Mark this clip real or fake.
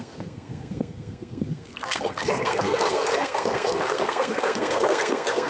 fake